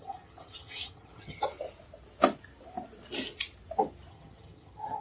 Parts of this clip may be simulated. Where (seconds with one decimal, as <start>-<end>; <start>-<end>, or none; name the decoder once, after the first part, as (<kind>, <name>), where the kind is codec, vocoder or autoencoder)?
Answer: 0.0-1.5 (vocoder, HiFi-GAN); 4.1-5.0